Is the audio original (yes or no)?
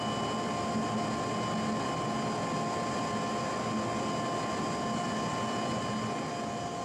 yes